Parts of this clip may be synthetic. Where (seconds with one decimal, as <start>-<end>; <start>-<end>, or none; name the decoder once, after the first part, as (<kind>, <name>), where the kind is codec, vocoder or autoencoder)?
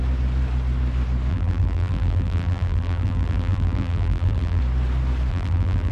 1.3-4.6 (vocoder, BigVGAN v2); 5.3-5.9